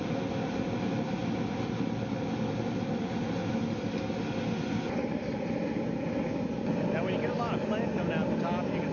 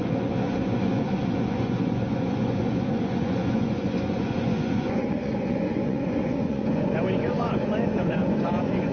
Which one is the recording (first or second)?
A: first